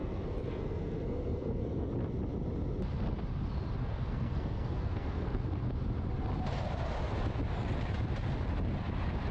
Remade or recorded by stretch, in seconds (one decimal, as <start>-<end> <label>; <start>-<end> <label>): 0.0-1.9 remade; 1.9-3.8 recorded; 3.8-5.4 remade; 5.4-9.3 recorded